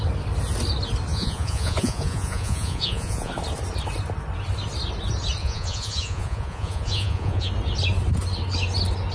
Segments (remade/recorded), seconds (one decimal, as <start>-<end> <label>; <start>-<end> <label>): 0.0-1.1 recorded; 1.1-3.3 remade; 3.3-5.4 recorded; 5.4-7.5 remade; 7.5-9.1 recorded